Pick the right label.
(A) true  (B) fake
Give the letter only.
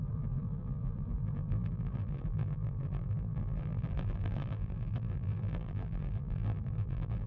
B